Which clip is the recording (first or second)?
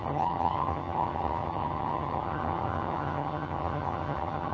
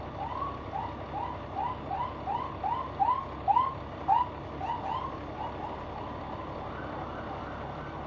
second